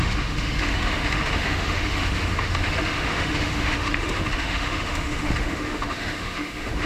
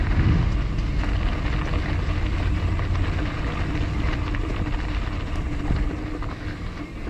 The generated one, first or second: first